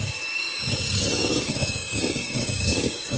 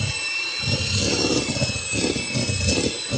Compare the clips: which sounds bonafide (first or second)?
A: second